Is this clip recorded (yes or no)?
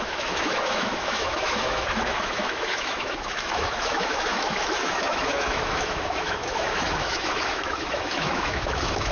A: no